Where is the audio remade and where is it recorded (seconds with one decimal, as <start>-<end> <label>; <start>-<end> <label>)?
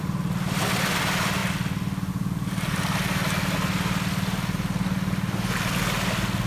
0.0-6.5 recorded